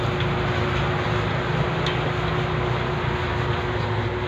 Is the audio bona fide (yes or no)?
yes